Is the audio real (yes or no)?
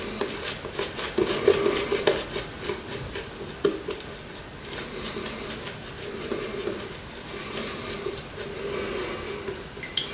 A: yes